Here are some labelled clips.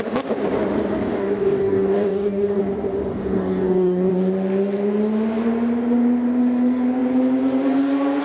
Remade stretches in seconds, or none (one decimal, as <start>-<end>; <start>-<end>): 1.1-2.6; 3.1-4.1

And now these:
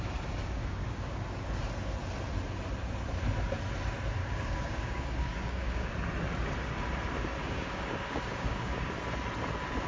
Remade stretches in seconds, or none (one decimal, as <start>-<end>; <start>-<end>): 0.4-1.2; 4.2-5.9; 7.4-8.9

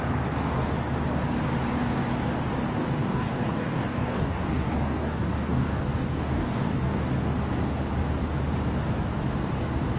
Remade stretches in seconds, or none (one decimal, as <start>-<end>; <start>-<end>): 2.8-7.1

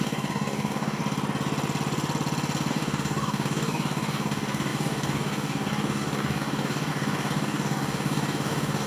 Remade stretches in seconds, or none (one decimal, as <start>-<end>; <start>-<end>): 0.0-1.0; 2.7-8.9